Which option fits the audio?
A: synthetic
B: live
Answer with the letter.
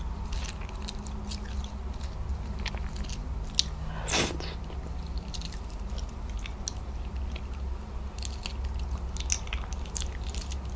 B